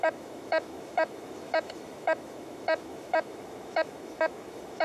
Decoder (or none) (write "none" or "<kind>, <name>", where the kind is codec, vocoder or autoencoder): autoencoder, DAC-VAE